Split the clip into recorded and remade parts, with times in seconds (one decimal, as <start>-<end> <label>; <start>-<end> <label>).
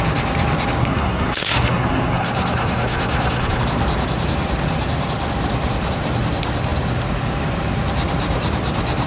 0.0-0.8 recorded; 0.8-3.6 remade; 3.6-9.1 recorded